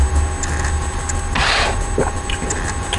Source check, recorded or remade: recorded